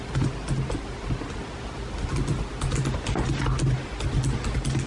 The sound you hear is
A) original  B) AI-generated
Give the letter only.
A